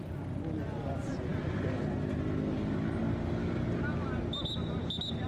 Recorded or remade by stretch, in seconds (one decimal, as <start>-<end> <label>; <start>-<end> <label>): 0.0-5.3 recorded